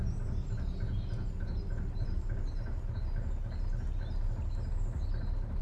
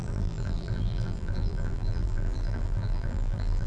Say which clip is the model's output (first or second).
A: second